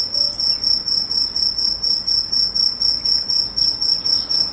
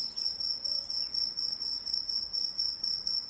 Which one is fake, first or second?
second